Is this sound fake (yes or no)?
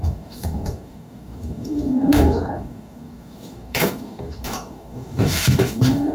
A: yes